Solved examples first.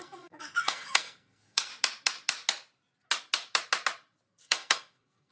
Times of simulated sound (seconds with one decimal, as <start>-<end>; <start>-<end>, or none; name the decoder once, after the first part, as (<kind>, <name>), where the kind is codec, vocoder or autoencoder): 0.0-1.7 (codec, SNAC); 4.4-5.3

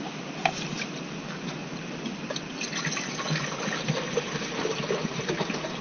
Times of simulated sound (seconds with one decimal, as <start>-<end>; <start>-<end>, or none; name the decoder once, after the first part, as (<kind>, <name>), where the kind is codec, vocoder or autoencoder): none

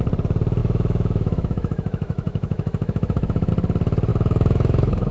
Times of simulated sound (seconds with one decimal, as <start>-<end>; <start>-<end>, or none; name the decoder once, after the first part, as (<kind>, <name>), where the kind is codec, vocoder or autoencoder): 0.6-3.5 (autoencoder, DAC-VAE); 4.1-5.1

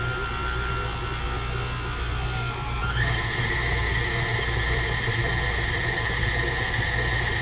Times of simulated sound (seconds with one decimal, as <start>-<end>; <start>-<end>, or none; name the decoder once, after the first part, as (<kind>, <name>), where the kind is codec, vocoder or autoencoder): none